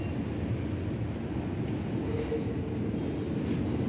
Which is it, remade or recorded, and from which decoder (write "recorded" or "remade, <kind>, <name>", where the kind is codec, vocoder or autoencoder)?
recorded